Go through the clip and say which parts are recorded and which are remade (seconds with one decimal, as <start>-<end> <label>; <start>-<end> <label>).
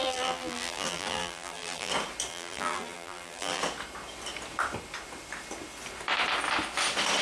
0.0-1.9 remade; 1.9-2.3 recorded; 2.3-3.6 remade; 3.6-7.2 recorded